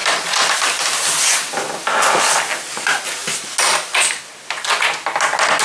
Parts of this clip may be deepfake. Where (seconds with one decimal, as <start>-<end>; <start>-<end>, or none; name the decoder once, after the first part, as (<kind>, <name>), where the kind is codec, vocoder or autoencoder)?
none